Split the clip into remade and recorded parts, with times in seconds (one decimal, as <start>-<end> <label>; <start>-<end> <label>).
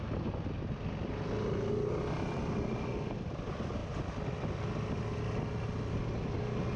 0.0-6.8 recorded